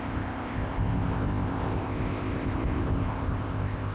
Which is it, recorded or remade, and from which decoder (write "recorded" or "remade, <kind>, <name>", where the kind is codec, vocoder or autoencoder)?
remade, codec, ZipCodec